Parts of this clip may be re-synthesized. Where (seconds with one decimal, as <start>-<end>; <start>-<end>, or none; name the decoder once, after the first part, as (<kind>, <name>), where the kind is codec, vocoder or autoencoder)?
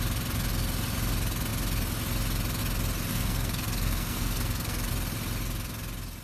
3.1-4.9 (codec, SNAC)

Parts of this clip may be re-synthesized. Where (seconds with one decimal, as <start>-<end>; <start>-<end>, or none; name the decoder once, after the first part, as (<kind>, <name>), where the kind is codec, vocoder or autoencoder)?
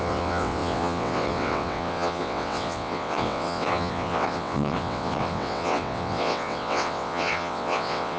0.0-8.2 (vocoder, WaveNeXt)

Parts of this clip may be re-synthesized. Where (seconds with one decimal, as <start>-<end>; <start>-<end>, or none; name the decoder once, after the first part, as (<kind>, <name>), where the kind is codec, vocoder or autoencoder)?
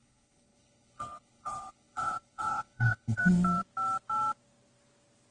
0.0-3.2 (codec, HILCodec)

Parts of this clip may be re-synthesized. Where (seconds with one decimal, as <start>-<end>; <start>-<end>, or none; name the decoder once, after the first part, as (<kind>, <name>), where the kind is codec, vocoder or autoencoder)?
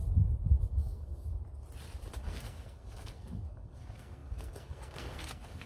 0.6-1.3 (codec, SNAC); 2.2-5.7